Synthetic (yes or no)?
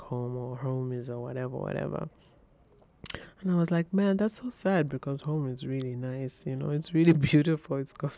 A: no